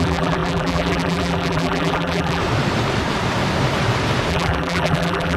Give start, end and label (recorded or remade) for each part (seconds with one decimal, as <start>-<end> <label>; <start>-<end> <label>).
0.0-2.4 remade; 2.4-4.3 recorded; 4.3-5.4 remade